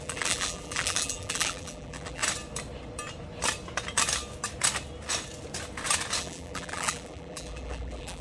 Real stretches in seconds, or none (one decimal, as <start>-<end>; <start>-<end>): 2.2-6.2